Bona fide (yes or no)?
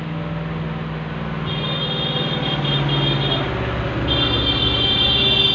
yes